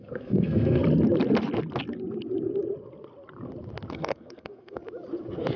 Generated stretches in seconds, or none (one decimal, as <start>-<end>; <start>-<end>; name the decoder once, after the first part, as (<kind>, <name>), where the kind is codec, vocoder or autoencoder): 0.0-0.8 (codec, SNAC); 3.9-4.8